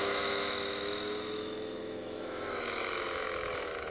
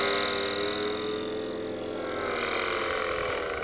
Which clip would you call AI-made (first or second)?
first